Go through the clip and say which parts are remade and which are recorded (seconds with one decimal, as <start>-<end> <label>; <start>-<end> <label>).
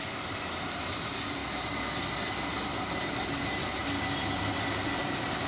0.0-1.4 remade; 1.4-3.0 recorded; 3.0-3.8 remade; 3.8-5.0 recorded; 5.0-5.5 remade